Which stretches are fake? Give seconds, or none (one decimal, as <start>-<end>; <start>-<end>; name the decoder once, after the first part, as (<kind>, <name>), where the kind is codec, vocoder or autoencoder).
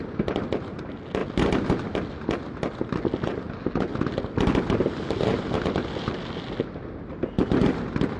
none